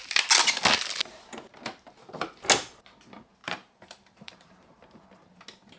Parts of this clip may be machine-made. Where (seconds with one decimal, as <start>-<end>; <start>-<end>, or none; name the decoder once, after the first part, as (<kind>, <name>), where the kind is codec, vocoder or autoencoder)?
3.4-5.0 (vocoder, BigVGAN v2)